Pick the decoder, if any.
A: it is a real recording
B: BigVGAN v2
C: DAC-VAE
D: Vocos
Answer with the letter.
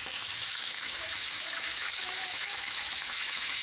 C